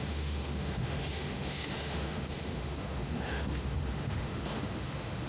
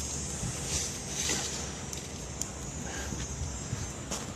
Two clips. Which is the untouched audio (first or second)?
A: second